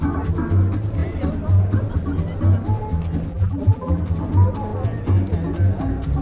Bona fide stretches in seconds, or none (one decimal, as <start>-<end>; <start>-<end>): 0.0-3.3; 4.0-6.2